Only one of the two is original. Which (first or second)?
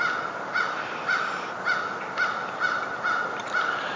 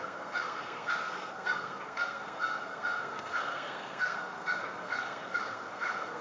first